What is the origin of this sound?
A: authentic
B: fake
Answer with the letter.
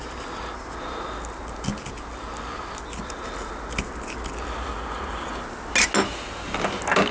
A